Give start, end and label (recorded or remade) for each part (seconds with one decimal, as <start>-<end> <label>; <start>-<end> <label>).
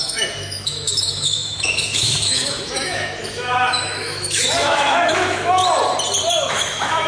0.0-5.6 remade; 5.6-6.5 recorded; 6.5-7.1 remade